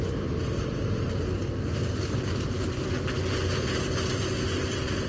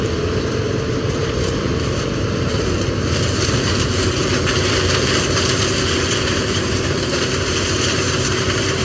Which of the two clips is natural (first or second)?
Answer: first